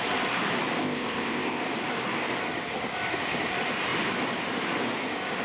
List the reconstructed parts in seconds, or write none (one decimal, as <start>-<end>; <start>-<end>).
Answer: 0.8-1.6